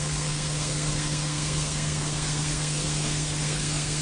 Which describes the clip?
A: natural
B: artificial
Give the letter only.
B